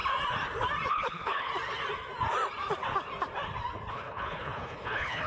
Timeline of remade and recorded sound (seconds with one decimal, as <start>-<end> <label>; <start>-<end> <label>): 0.0-0.9 recorded; 0.9-1.5 remade; 1.5-3.9 recorded; 3.9-5.3 remade